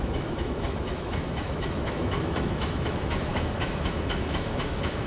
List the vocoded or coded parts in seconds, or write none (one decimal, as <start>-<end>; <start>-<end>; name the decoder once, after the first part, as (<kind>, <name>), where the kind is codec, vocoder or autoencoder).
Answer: 0.0-5.1 (autoencoder, DAC-VAE)